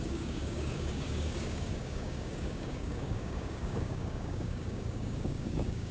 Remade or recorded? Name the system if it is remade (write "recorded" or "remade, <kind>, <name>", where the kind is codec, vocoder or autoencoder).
remade, codec, DAC